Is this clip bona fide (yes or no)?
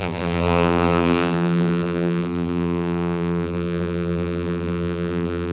no